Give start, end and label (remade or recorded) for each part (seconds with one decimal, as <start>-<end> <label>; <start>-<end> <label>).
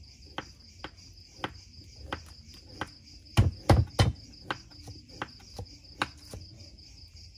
0.0-7.4 recorded